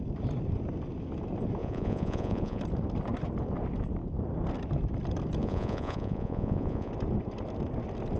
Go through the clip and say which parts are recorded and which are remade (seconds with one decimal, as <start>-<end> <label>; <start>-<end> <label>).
0.0-1.6 recorded; 1.6-2.6 remade; 2.6-5.4 recorded; 5.4-6.9 remade; 6.9-8.2 recorded